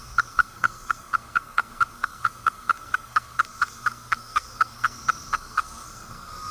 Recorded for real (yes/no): no